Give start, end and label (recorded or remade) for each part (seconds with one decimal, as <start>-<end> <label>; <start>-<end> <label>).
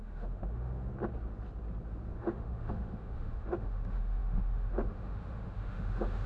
0.0-0.9 remade; 0.9-2.2 recorded; 2.2-6.3 remade